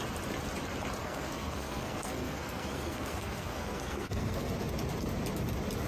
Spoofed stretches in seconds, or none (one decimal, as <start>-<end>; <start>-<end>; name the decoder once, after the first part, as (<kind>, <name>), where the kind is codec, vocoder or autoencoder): 1.0-4.5 (codec, SNAC)

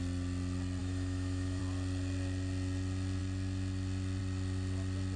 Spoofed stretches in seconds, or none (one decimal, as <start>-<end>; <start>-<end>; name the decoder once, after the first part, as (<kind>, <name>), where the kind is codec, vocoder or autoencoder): 0.8-1.6 (autoencoder, DAC-VAE)

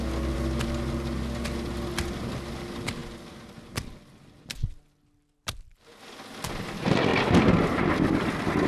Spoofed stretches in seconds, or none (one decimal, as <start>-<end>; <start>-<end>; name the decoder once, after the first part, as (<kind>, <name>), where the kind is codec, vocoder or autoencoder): none

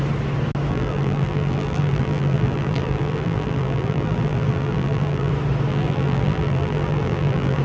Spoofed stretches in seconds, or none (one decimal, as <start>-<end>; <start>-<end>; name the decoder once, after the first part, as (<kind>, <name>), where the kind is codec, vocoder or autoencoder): 0.7-5.3 (vocoder, BigVGAN v2); 5.7-7.6

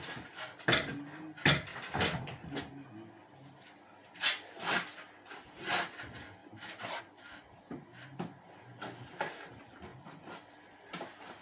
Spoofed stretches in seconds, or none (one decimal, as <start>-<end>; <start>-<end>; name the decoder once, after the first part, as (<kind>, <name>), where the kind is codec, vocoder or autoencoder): none

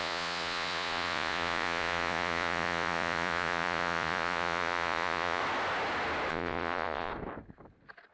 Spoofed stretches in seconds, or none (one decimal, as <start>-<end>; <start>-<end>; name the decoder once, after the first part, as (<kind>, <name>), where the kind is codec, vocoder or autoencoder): 0.0-5.4 (vocoder, Vocos); 6.3-7.1